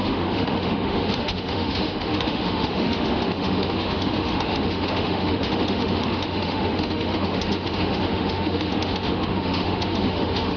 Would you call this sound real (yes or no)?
no